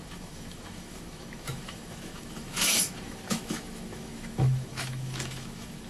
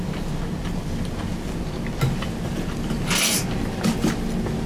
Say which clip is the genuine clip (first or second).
second